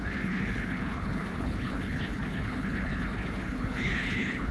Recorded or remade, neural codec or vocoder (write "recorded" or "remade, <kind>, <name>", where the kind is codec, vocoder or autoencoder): remade, codec, HILCodec